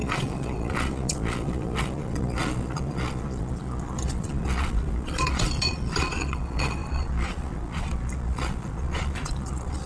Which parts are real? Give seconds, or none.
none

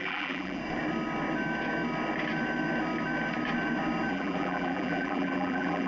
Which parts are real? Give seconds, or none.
0.6-4.1